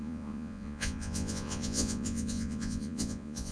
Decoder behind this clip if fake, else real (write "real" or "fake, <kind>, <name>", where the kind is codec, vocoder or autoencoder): fake, vocoder, Vocos